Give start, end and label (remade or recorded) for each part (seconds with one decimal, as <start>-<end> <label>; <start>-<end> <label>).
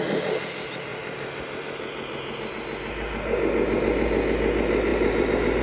0.0-0.9 recorded; 0.9-2.5 remade; 2.5-4.9 recorded; 4.9-5.6 remade